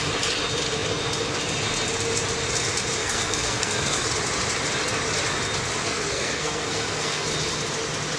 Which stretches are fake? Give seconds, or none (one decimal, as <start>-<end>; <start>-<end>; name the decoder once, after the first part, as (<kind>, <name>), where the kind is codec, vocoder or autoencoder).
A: 3.0-4.1 (codec, SNAC); 5.8-7.3